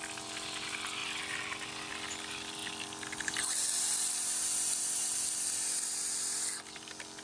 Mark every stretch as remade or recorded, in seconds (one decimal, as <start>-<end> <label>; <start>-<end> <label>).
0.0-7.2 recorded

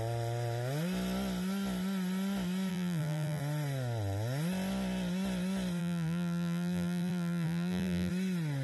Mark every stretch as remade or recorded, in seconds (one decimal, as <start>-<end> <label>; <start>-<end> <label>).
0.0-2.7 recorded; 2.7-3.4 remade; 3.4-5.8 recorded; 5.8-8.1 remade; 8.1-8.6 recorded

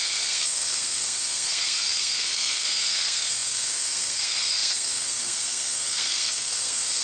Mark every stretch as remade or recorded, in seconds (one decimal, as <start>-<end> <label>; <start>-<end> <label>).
0.0-7.0 remade

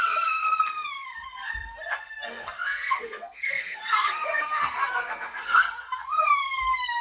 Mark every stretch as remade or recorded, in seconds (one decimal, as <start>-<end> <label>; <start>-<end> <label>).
0.0-7.0 remade

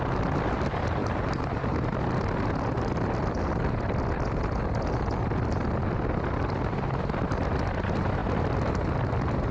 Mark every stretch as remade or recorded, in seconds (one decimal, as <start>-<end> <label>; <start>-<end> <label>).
0.0-9.5 recorded

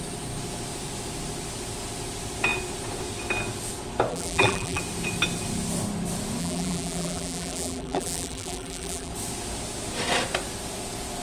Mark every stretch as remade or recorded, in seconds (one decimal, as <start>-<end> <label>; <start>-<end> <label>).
0.0-4.1 recorded; 4.1-4.8 remade; 4.8-6.4 recorded; 6.4-9.1 remade; 9.1-11.2 recorded

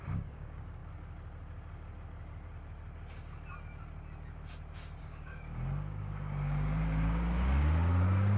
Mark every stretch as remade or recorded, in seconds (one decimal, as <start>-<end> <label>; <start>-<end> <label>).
0.0-0.8 remade; 0.8-5.0 recorded; 5.0-8.4 remade

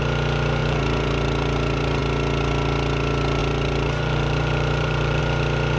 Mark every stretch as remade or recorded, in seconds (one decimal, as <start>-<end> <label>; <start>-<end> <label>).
0.0-0.6 recorded; 0.6-2.0 remade; 2.0-3.4 recorded; 3.4-5.2 remade; 5.2-5.8 recorded